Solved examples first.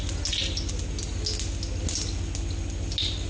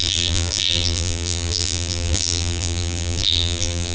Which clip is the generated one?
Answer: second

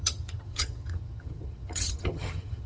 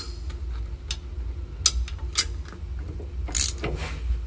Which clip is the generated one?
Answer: first